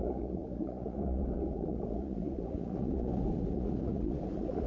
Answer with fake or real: fake